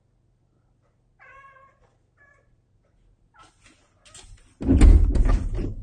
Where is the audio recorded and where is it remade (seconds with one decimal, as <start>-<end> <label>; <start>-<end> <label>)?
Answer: 0.0-5.8 recorded